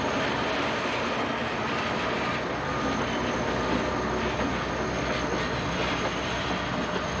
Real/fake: real